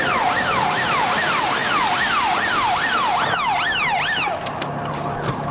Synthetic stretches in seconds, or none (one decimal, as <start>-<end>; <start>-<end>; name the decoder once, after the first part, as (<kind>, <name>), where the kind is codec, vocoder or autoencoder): none